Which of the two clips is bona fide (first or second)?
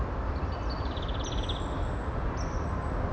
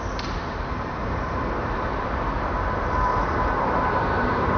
first